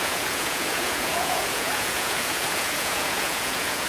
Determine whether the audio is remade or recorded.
remade